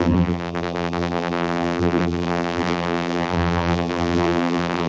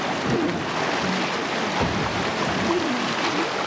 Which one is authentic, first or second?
second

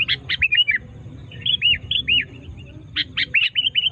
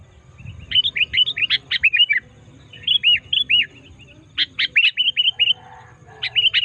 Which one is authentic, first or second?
second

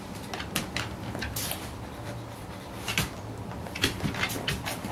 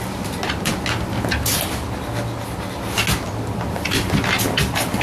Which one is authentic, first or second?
second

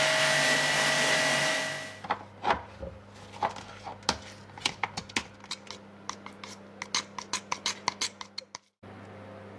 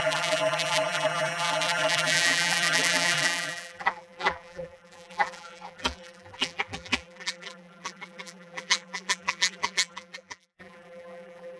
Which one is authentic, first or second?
first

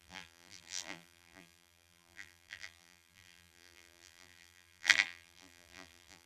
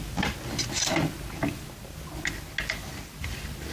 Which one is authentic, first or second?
second